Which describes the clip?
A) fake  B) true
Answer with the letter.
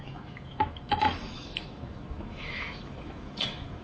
A